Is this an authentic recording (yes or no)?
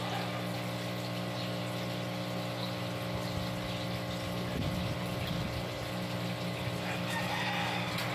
yes